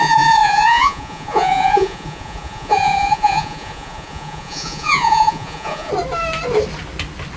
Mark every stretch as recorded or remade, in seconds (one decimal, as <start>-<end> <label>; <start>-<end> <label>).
0.0-5.9 remade; 5.9-7.4 recorded